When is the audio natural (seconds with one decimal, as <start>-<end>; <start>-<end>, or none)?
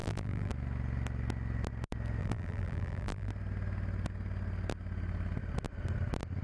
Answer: 0.5-2.2; 3.3-6.4